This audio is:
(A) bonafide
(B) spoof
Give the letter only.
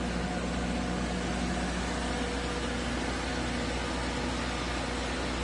A